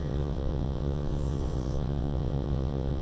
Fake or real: fake